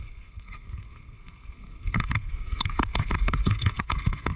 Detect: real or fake fake